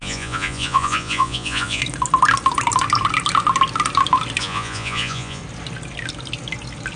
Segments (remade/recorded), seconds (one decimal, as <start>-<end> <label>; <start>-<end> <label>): 0.0-1.8 remade; 1.8-4.4 recorded; 4.4-5.4 remade; 5.4-7.0 recorded